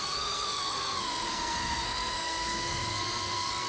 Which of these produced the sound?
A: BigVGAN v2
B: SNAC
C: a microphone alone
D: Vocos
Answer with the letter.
B